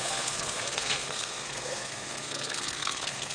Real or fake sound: fake